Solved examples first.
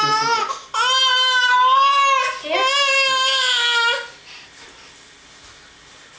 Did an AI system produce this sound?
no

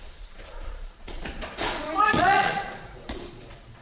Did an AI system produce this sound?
yes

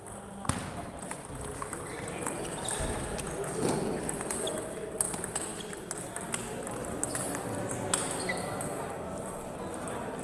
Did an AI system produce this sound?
no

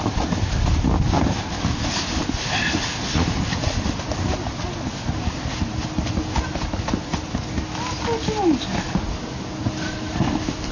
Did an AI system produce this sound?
no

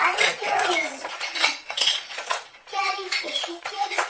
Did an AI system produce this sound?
yes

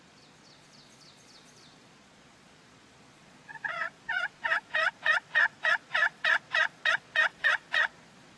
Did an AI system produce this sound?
yes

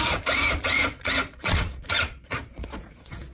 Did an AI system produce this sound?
yes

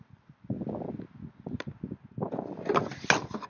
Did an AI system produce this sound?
no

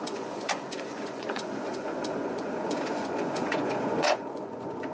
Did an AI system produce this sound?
yes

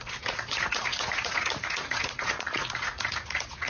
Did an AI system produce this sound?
yes